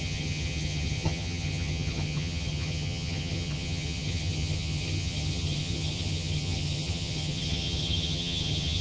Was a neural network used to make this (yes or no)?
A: yes